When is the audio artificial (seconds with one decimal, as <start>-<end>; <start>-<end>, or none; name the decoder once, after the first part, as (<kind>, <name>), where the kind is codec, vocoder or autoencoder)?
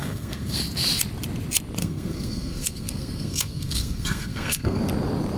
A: 0.0-0.6 (codec, SNAC); 1.8-4.8